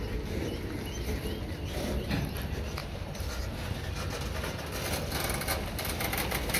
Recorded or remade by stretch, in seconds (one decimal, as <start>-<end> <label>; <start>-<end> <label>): 0.0-2.8 recorded; 2.8-3.3 remade; 3.3-6.6 recorded